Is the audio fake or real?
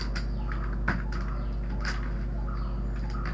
real